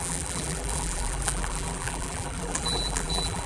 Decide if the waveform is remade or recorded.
remade